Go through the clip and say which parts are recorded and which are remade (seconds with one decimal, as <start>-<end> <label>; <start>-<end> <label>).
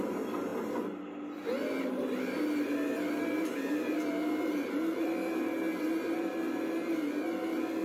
0.0-7.8 recorded